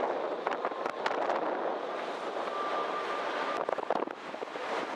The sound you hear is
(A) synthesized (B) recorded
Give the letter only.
B